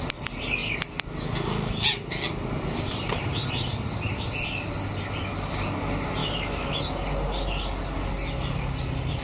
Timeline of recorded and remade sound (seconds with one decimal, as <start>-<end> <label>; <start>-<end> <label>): 0.0-6.2 recorded; 6.2-6.8 remade; 6.8-9.2 recorded